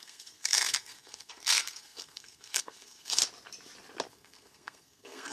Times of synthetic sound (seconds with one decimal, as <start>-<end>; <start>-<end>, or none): 0.0-3.2; 4.1-5.3